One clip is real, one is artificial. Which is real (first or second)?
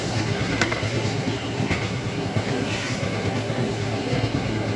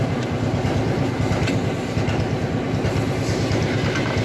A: second